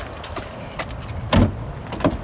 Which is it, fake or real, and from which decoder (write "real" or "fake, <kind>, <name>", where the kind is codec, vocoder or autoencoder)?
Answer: real